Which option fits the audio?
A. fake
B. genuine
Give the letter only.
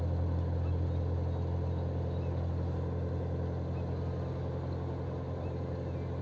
B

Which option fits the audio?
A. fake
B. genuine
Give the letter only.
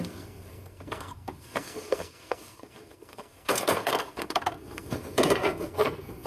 A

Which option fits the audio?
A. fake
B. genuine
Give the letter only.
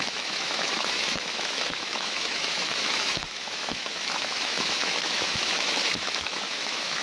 A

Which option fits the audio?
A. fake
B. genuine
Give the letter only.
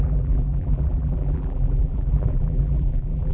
A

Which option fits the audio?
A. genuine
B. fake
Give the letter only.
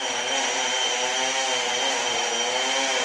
A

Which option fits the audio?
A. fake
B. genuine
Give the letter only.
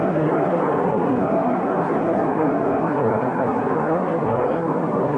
A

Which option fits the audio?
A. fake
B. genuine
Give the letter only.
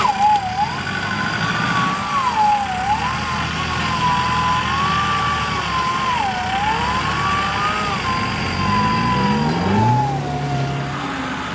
B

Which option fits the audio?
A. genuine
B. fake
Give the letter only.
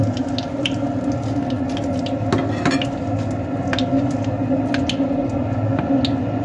A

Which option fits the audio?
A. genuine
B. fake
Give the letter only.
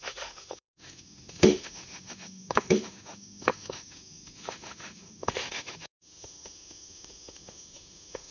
B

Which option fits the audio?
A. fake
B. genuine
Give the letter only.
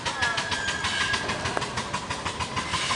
B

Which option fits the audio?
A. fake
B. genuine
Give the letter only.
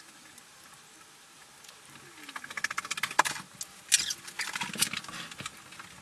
B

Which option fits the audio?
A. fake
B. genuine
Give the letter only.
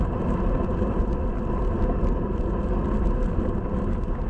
B